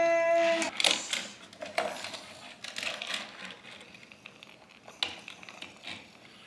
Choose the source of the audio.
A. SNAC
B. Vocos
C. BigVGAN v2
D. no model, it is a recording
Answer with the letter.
D